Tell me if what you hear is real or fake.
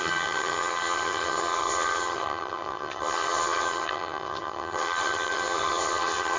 fake